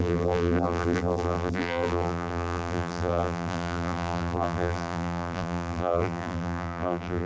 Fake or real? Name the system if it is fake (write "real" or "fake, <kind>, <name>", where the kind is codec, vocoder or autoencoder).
fake, vocoder, BigVGAN v2